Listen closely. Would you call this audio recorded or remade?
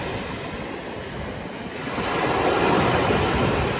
recorded